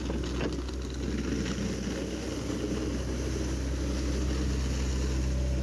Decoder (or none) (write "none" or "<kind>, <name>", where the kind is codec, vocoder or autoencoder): none